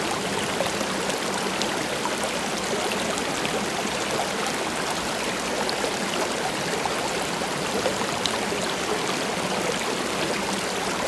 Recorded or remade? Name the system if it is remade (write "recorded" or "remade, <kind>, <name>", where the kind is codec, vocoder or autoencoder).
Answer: recorded